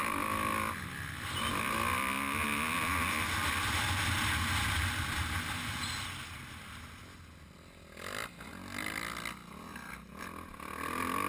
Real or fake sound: real